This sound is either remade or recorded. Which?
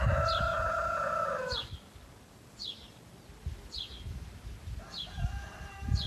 recorded